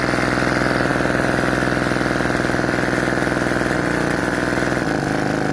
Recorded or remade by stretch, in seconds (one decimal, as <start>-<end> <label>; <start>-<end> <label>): 0.0-5.5 recorded